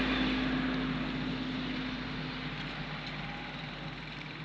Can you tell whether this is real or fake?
real